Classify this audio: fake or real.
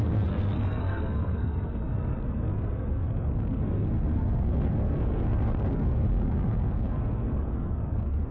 fake